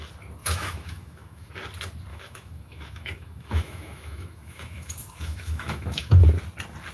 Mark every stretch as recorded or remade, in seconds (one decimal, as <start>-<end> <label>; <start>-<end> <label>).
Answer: 0.0-0.4 recorded; 0.4-1.5 remade; 1.5-2.1 recorded; 2.1-6.2 remade; 6.2-6.9 recorded